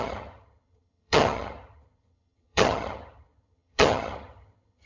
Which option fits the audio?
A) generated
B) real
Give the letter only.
A